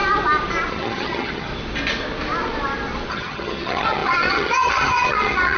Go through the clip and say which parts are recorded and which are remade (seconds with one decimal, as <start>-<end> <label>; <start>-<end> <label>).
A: 0.0-0.7 recorded; 0.7-1.5 remade; 1.5-3.1 recorded; 3.1-5.6 remade